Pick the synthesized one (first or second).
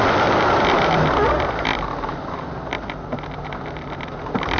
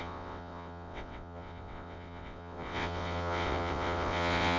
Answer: second